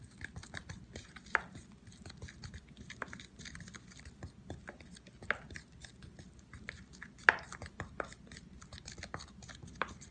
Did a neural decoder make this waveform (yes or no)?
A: no